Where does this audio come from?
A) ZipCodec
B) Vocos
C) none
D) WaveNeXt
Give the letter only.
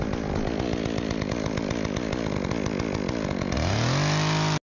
C